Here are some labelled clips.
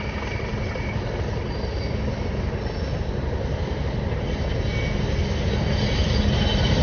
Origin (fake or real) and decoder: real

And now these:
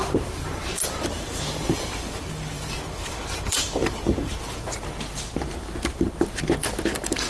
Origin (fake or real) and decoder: fake, vocoder, BigVGAN v2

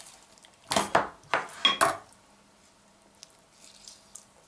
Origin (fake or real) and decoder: real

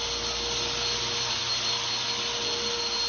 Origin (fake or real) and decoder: real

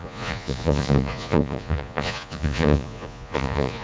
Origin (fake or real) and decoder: fake, vocoder, Vocos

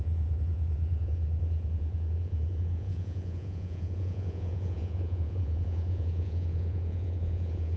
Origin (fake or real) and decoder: fake, vocoder, Vocos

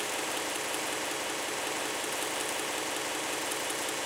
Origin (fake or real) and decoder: real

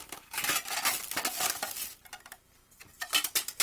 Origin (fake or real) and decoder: real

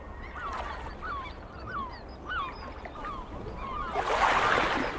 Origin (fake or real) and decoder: real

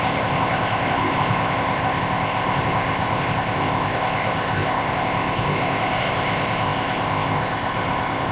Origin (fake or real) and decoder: fake, codec, ZipCodec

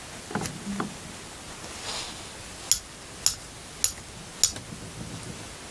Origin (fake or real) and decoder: real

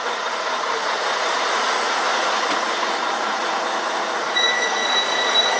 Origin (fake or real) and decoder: fake, vocoder, Vocos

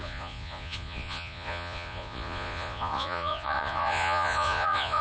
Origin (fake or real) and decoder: fake, vocoder, Vocos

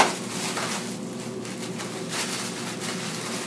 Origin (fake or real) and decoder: real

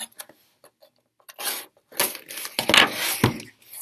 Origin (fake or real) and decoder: real